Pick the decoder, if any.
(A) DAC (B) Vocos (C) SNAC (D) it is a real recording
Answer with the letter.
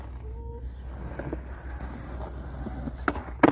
D